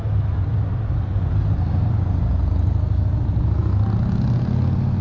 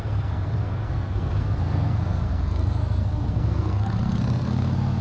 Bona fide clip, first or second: first